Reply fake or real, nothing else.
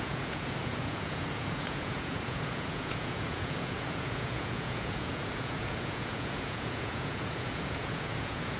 fake